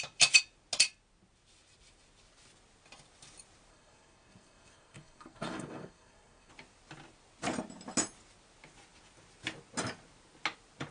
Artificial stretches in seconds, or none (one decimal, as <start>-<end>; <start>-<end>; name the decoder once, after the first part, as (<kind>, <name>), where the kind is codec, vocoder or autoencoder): 3.7-6.5 (codec, SNAC)